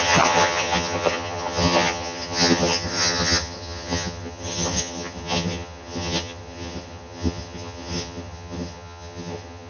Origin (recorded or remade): remade